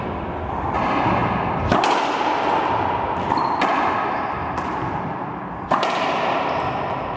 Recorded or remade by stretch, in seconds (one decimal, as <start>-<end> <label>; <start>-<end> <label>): 0.0-1.2 recorded; 1.2-2.6 remade; 2.6-4.4 recorded; 4.4-5.9 remade; 5.9-7.2 recorded

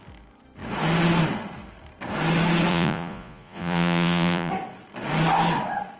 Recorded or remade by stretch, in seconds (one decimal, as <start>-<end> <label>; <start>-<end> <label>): 0.0-2.7 recorded; 2.7-4.5 remade; 4.5-6.0 recorded